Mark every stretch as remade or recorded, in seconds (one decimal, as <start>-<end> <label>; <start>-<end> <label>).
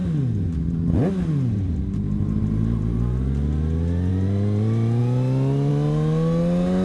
0.0-6.8 recorded